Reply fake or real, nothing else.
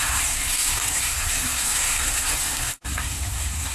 fake